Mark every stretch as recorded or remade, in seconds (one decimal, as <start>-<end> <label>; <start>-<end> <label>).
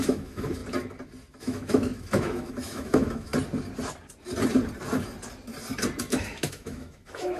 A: 0.0-0.6 remade; 0.6-1.4 recorded; 1.4-3.3 remade; 3.3-6.0 recorded; 6.0-7.4 remade